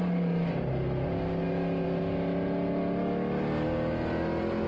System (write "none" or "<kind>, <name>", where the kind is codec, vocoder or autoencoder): none